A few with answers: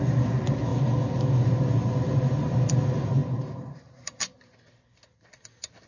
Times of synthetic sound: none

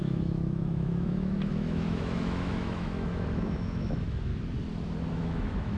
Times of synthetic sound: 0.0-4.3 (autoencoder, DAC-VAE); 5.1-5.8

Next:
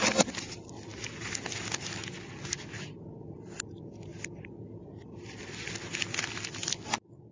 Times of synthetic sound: none